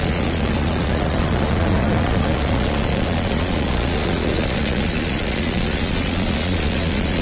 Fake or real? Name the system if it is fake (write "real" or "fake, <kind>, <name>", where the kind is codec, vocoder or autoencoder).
fake, vocoder, Vocos